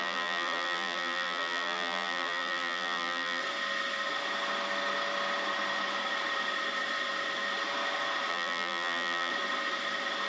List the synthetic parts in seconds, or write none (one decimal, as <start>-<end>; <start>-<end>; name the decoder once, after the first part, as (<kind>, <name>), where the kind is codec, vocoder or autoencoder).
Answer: 0.0-3.4 (vocoder, BigVGAN v2); 8.3-9.3